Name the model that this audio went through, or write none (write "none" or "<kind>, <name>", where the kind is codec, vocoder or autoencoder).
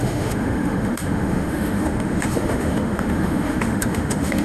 autoencoder, DAC-VAE